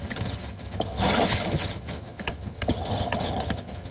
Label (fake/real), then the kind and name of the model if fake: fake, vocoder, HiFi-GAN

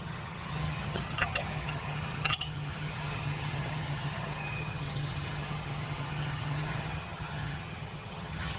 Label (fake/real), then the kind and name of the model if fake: fake, vocoder, HiFi-GAN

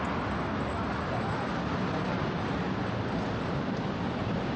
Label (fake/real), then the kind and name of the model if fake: real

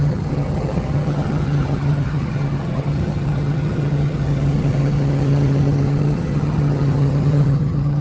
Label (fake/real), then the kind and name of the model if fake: fake, vocoder, HiFi-GAN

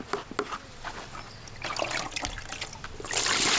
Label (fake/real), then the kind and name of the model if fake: real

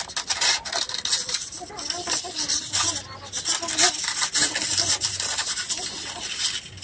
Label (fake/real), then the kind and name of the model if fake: real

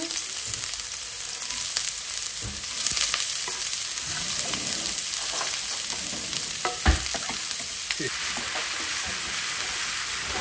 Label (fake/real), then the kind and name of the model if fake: real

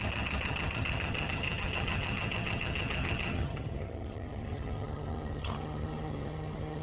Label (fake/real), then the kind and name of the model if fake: fake, vocoder, HiFi-GAN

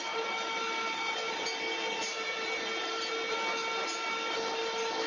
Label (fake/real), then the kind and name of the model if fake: real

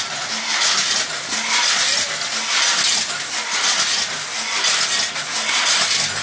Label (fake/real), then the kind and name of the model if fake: real